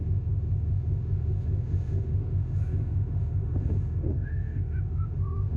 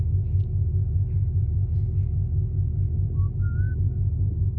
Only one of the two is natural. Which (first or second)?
second